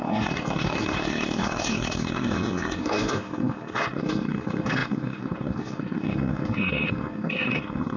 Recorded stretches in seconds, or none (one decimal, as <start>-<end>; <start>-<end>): none